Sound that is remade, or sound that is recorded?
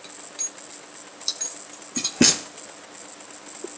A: recorded